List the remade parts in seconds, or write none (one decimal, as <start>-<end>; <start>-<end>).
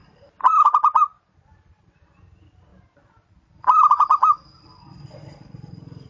0.0-2.7; 4.8-6.1